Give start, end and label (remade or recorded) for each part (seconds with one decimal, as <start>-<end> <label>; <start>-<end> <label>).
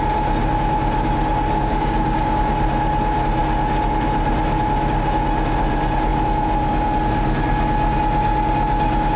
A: 0.0-1.7 recorded; 1.7-2.5 remade; 2.5-9.2 recorded